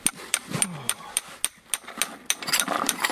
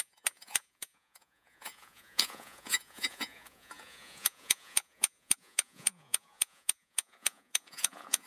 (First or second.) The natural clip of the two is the first